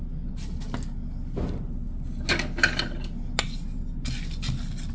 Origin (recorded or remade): recorded